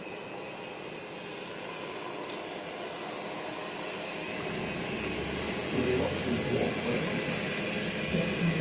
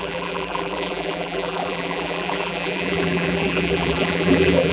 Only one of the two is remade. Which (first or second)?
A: second